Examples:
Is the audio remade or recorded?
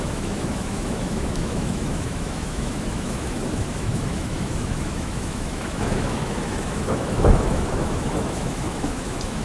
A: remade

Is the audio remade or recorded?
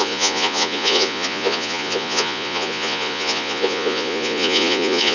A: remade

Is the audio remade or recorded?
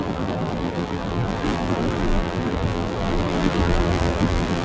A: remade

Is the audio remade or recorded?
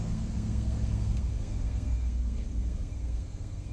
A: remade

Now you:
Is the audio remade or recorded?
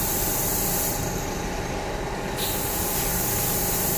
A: recorded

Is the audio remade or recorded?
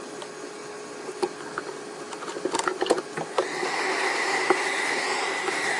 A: recorded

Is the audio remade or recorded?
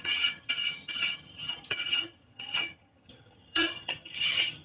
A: remade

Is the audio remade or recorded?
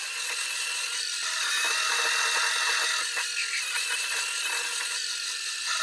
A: recorded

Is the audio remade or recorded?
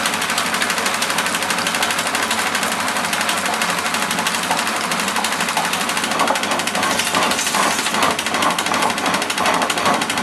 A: recorded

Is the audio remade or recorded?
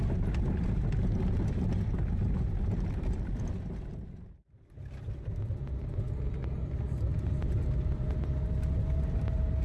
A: recorded